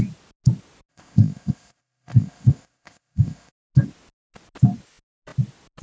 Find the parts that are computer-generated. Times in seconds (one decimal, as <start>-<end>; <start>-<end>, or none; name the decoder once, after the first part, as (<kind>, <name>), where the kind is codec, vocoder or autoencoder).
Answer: 0.9-3.5 (codec, ZipCodec)